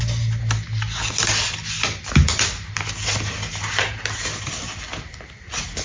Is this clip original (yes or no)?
yes